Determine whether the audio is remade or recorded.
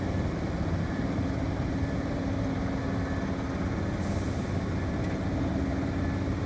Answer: recorded